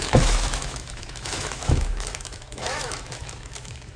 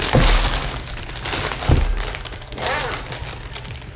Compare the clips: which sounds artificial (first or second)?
first